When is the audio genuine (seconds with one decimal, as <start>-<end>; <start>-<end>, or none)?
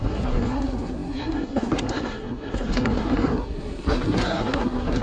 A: none